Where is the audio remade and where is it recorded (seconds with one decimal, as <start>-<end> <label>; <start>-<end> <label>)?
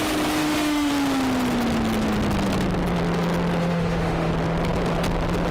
0.0-0.4 recorded; 0.4-0.9 remade; 0.9-3.6 recorded; 3.6-4.3 remade; 4.3-5.5 recorded